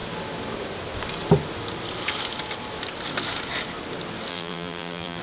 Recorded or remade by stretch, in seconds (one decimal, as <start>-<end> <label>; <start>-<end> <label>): 0.0-4.3 recorded; 4.3-5.2 remade